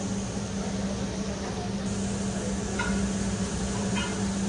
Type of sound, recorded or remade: recorded